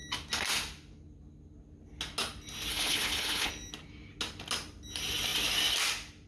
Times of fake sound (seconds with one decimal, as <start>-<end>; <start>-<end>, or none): 2.7-3.5